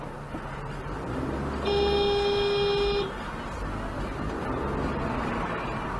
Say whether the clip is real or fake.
real